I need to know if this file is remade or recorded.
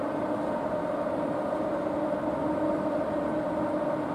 recorded